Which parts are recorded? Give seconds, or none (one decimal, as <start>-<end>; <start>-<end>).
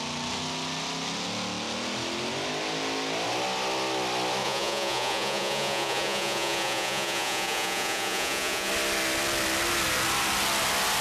0.0-4.4; 8.7-11.0